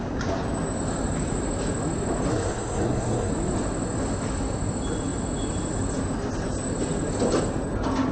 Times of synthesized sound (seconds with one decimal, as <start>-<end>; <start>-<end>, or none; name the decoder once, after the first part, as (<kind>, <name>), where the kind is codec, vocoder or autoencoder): 2.3-3.3 (codec, SNAC)

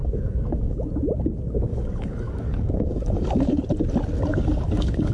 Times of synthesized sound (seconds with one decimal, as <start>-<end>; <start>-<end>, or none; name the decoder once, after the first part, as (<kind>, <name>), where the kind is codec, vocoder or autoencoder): 0.0-0.9 (codec, DAC); 1.7-3.6; 4.3-5.1